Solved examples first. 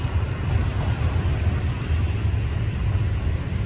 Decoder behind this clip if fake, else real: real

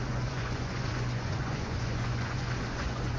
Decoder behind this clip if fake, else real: fake, vocoder, Vocos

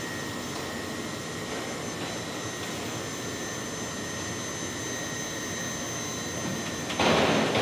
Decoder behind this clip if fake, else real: real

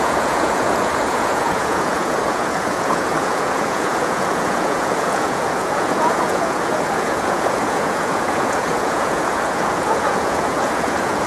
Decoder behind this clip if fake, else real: fake, vocoder, Vocos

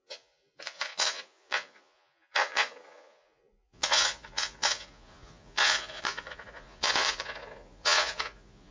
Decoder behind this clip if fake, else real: fake, vocoder, Vocos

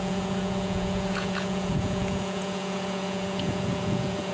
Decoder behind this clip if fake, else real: fake, vocoder, Vocos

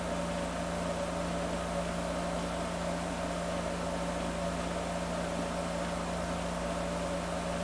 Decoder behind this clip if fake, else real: real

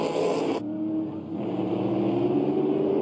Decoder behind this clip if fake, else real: real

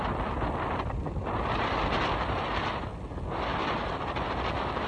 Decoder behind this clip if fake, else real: real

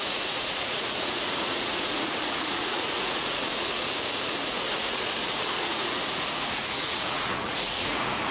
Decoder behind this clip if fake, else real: fake, vocoder, Vocos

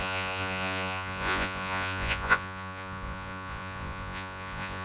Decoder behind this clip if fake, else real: fake, vocoder, Vocos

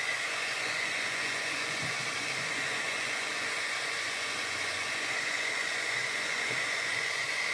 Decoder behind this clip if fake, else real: fake, vocoder, Vocos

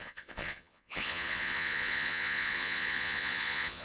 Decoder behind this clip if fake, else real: fake, vocoder, Vocos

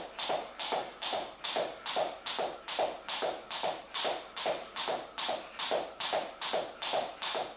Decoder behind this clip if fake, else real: real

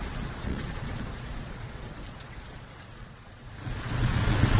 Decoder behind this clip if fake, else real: fake, vocoder, Vocos